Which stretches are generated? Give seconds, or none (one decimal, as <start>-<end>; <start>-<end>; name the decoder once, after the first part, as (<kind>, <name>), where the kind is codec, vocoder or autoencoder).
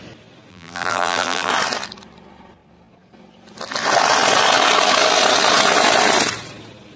0.5-1.5 (vocoder, BigVGAN v2)